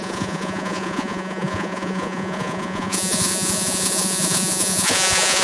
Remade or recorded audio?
remade